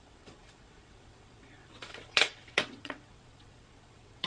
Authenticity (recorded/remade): remade